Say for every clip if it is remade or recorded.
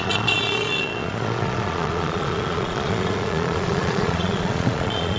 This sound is remade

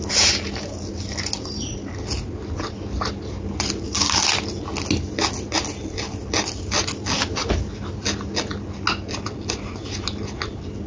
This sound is recorded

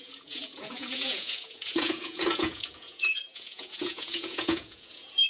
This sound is remade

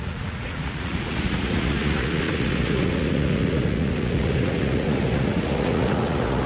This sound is remade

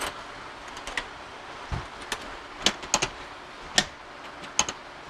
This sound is recorded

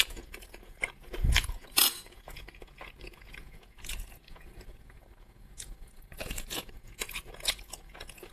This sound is remade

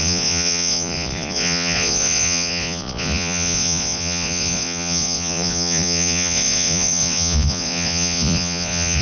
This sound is remade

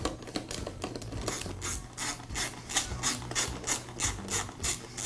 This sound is recorded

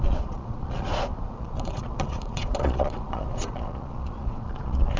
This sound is remade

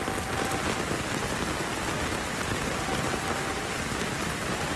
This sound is recorded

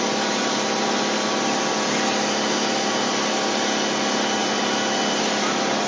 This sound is recorded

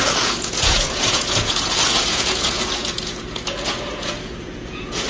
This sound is remade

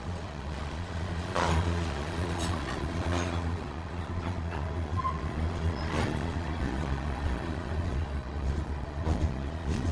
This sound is remade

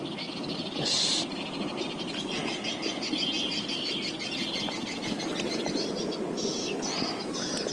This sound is recorded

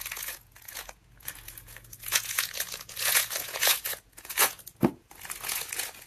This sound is remade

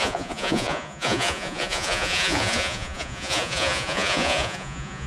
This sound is remade